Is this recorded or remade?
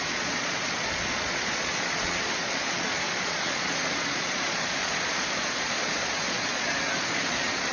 remade